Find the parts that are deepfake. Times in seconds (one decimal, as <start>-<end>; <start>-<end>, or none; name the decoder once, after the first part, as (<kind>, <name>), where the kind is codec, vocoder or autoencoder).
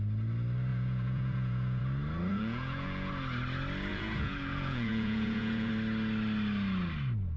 0.7-1.8 (vocoder, Vocos); 2.3-3.1; 3.9-5.7